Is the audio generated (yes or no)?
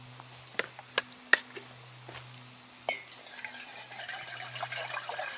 no